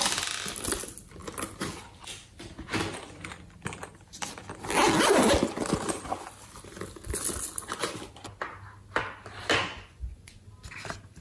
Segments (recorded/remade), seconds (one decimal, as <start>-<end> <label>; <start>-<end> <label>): 0.0-9.6 recorded; 9.6-10.5 remade; 10.5-11.2 recorded